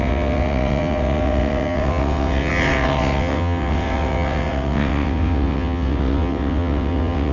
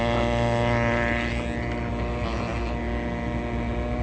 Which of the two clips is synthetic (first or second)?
first